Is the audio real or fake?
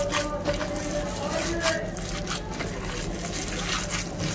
real